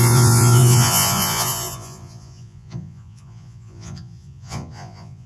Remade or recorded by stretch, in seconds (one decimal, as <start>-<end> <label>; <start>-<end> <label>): 0.0-5.3 remade